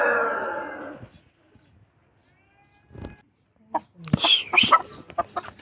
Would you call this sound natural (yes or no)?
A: yes